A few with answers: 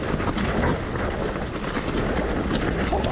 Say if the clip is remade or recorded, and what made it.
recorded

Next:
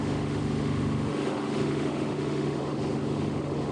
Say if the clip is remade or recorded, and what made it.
remade, autoencoder, DAC-VAE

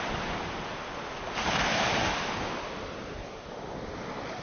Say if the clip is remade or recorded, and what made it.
recorded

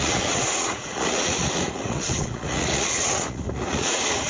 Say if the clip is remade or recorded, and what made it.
remade, vocoder, Vocos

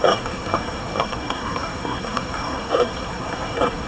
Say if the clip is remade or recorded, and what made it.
remade, codec, SNAC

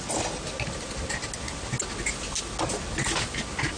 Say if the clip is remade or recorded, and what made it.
recorded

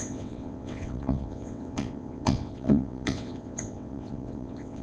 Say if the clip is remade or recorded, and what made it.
remade, vocoder, WaveNeXt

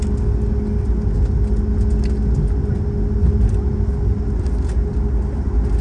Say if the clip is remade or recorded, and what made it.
recorded